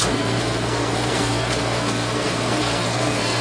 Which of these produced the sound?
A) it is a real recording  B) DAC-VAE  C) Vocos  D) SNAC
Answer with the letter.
D